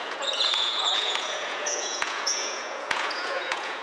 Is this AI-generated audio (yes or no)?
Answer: yes